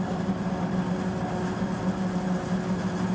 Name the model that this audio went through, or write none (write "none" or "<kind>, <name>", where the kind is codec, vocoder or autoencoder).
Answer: none